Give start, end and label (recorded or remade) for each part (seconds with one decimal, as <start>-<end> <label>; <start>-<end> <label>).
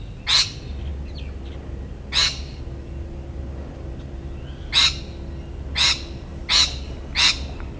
0.0-7.8 recorded